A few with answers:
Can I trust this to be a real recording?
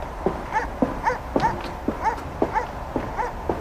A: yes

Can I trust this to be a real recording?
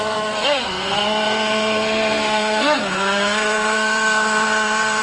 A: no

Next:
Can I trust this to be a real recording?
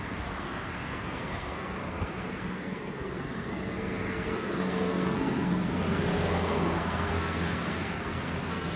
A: no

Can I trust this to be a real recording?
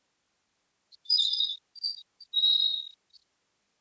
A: yes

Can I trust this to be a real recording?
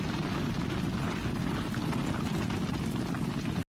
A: yes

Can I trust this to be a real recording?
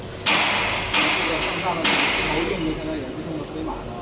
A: yes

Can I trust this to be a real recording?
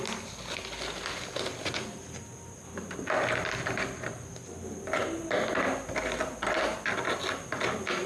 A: yes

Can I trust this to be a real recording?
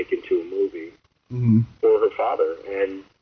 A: yes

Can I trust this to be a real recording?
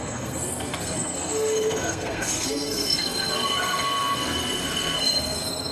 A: no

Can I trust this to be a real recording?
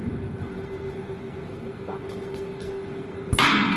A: no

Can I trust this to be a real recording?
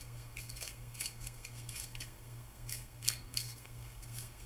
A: no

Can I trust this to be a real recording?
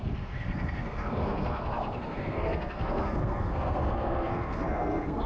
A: no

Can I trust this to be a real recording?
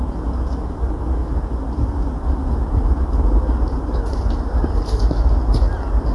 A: yes